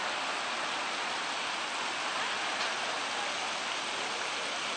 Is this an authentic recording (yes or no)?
yes